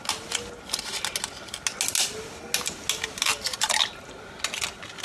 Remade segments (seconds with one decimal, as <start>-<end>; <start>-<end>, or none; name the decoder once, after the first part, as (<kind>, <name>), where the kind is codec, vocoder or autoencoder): none